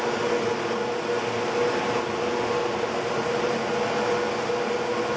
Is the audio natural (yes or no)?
yes